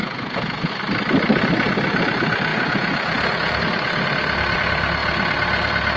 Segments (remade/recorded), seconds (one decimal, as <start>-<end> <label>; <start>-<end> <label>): 0.0-0.7 remade; 0.7-2.5 recorded; 2.5-3.6 remade; 3.6-6.0 recorded